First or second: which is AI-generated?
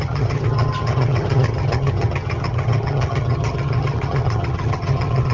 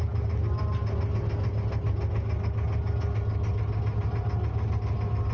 first